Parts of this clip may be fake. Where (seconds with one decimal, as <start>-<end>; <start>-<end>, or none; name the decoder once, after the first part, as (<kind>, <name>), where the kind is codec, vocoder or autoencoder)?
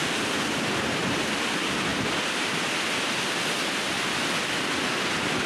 none